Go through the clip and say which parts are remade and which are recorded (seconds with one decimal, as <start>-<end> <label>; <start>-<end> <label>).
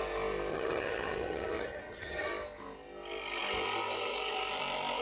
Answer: 0.0-0.5 recorded; 0.5-2.3 remade; 2.3-5.0 recorded